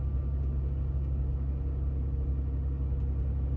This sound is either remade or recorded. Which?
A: recorded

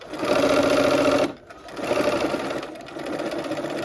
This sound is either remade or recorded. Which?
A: recorded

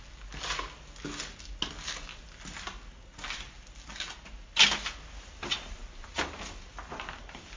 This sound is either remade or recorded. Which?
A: recorded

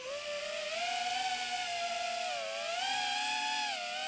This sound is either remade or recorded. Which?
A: recorded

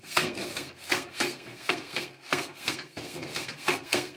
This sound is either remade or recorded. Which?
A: remade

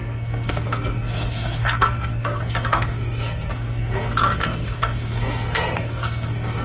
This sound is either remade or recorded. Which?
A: remade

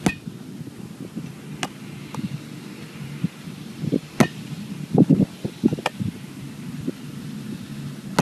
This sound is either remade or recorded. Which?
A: recorded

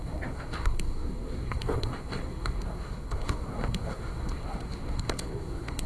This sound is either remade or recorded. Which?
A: remade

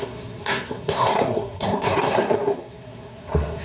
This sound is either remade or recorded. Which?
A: remade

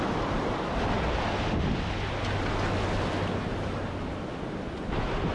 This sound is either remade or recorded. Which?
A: recorded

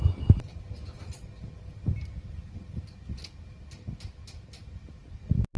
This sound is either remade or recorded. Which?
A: recorded